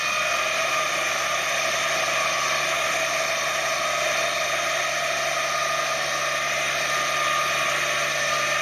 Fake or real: real